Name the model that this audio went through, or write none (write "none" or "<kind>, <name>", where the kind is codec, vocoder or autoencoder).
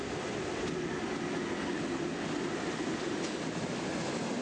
none